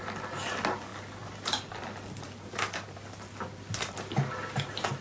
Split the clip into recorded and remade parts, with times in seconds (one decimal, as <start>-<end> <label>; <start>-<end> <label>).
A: 0.0-5.0 recorded